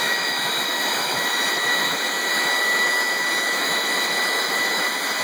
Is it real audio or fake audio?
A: fake